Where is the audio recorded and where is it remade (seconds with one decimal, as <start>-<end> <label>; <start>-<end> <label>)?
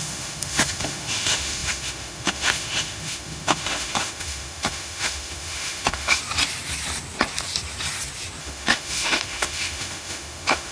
0.0-6.2 remade; 6.2-8.4 recorded; 8.4-10.7 remade